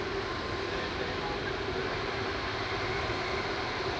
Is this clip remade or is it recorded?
recorded